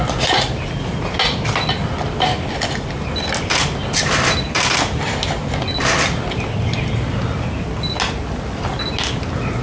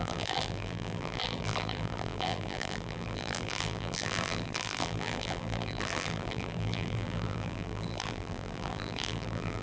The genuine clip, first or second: first